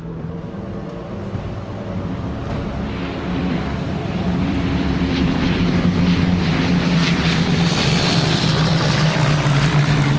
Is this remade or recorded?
remade